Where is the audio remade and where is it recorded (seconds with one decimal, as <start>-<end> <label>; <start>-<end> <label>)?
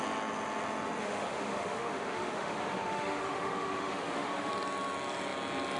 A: 0.0-1.0 recorded; 1.0-4.5 remade; 4.5-5.8 recorded